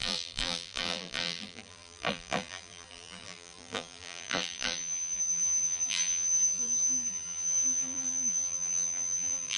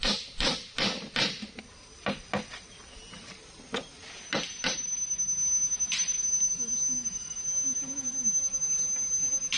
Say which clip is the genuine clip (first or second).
second